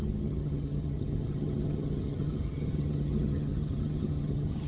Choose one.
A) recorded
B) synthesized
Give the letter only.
B